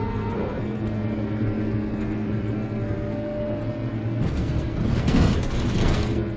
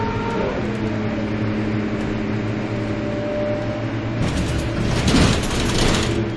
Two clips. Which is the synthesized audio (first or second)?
first